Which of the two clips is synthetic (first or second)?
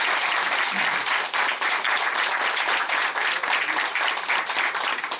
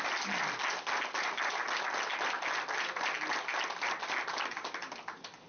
first